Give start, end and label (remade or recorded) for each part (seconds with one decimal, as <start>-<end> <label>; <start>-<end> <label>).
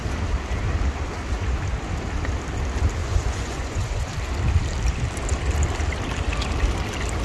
0.0-3.0 recorded; 3.0-4.1 remade; 4.1-7.2 recorded